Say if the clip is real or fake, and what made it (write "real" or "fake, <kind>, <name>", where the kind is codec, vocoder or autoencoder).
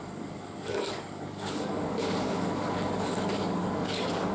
fake, codec, DAC